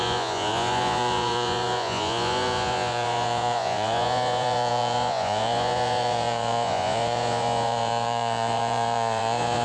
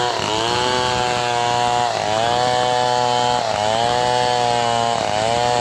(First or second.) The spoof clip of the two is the first